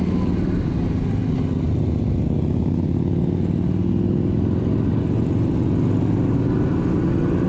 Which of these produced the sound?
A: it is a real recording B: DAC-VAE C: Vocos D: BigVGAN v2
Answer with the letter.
A